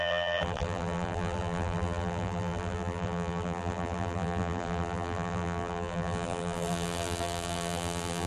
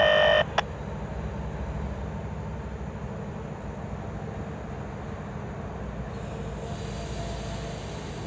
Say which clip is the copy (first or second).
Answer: first